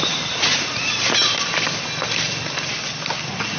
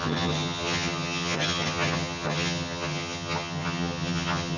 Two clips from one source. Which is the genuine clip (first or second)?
first